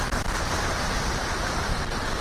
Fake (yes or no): no